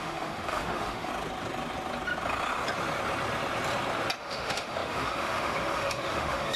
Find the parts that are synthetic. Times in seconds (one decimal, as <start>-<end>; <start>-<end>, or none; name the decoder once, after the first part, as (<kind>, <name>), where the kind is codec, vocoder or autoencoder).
0.0-1.1 (autoencoder, DAC-VAE); 4.2-6.6

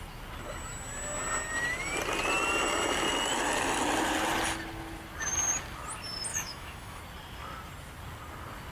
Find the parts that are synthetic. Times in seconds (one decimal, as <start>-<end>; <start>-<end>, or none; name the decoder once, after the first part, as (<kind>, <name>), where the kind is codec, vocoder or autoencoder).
6.3-7.0 (autoencoder, DAC-VAE)

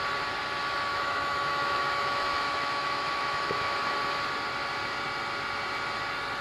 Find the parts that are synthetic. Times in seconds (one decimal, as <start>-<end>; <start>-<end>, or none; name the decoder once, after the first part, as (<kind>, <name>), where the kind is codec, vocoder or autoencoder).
0.9-3.9 (autoencoder, DAC-VAE)

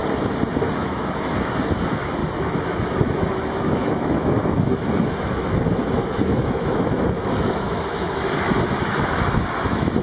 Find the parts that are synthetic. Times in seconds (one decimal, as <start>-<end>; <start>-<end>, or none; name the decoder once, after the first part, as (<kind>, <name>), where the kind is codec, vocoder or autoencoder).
0.8-10.0 (autoencoder, DAC-VAE)

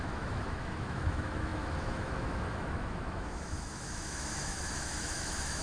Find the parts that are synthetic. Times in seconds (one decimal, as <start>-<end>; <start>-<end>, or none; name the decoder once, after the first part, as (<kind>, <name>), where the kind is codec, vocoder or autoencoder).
0.0-5.6 (autoencoder, DAC-VAE)